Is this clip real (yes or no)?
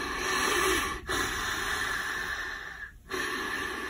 yes